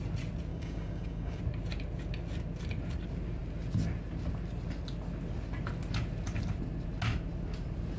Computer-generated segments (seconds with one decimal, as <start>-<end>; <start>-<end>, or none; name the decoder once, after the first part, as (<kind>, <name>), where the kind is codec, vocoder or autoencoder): 0.5-1.4 (codec, DAC)